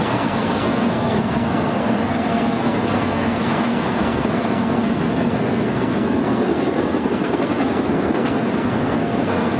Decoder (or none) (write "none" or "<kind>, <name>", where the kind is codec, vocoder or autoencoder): codec, SNAC